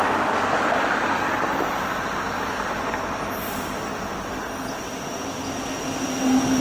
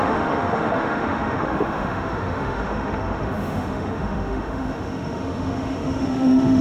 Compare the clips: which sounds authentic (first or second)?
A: first